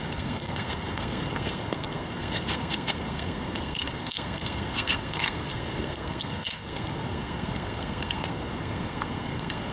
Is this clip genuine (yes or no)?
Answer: no